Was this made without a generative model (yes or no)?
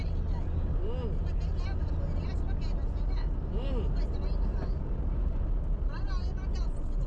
yes